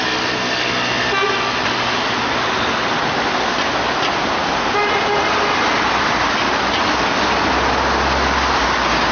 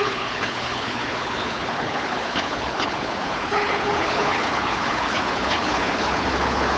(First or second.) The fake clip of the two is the second